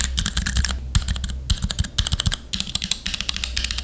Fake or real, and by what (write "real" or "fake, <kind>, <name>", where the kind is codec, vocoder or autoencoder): real